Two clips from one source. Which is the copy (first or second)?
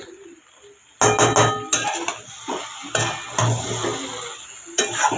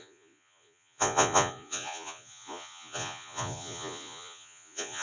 second